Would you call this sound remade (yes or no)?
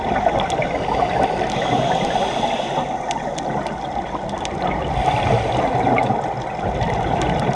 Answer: no